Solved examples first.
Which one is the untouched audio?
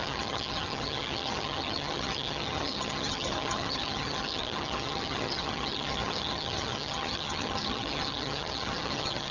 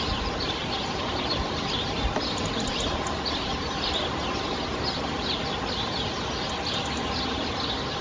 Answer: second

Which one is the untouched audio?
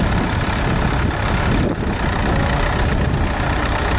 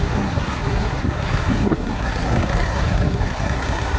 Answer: first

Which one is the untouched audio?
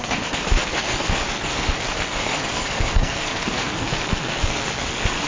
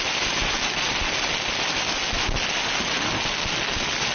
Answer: second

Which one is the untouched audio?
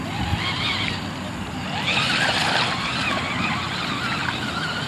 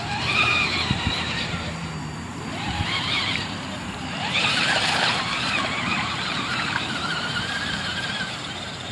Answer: first